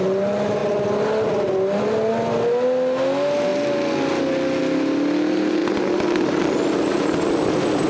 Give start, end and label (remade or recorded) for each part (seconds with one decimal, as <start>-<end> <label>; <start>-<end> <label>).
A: 0.0-7.9 recorded